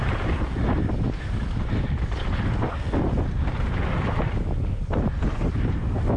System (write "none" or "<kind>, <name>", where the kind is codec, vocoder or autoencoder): none